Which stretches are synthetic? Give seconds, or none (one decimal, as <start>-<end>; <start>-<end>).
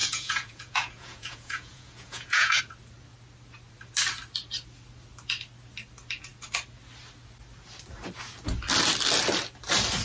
0.0-2.6